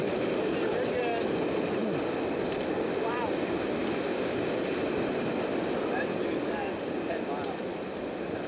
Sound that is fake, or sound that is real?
real